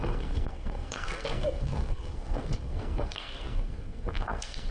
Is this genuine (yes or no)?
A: no